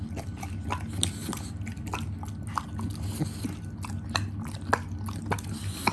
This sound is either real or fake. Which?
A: real